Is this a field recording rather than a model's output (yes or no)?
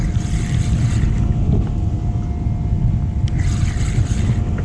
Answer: yes